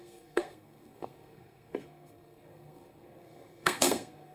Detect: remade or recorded remade